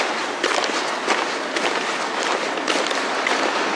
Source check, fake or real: real